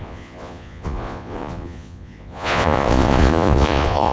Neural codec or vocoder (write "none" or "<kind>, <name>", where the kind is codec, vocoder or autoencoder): vocoder, Vocos